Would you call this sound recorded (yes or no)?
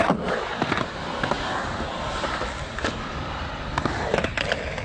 yes